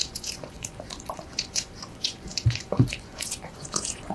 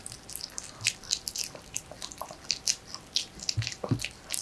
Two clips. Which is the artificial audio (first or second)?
first